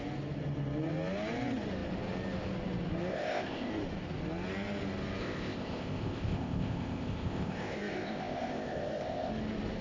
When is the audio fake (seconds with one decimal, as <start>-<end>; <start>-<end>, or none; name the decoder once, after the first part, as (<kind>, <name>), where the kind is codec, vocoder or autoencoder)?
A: 3.1-3.7 (codec, ZipCodec); 5.2-9.3